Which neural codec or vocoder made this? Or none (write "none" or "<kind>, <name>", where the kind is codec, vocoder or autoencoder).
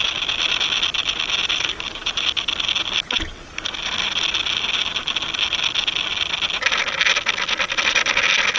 none